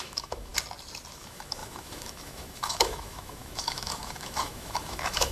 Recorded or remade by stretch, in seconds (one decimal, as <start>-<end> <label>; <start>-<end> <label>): 0.0-0.5 remade; 0.5-1.1 recorded; 1.1-5.3 remade

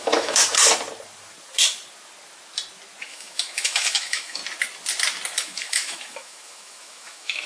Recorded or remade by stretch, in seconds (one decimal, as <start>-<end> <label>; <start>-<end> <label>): 0.0-0.4 remade; 0.4-3.0 recorded; 3.0-4.4 remade; 4.4-5.4 recorded; 5.4-7.5 remade

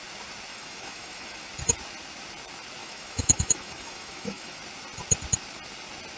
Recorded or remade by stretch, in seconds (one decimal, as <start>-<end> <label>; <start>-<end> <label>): 0.0-0.5 recorded; 0.5-1.5 remade; 1.5-2.8 recorded; 2.8-4.6 remade; 4.6-6.2 recorded